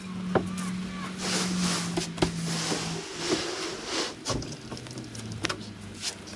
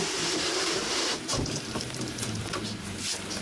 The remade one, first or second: second